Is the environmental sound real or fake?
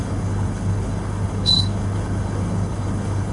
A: fake